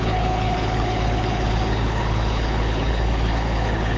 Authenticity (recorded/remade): remade